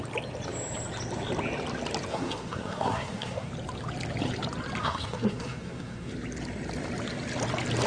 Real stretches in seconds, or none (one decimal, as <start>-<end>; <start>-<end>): 0.0-2.1; 3.5-4.8; 6.1-7.9